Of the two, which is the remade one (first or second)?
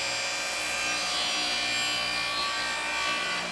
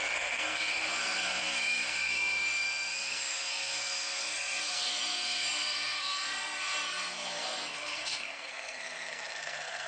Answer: second